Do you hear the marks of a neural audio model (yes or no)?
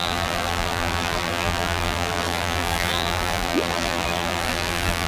yes